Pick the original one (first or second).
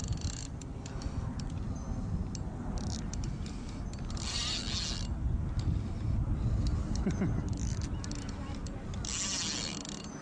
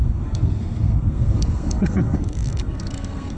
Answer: first